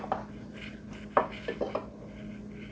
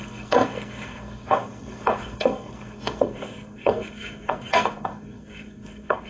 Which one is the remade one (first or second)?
second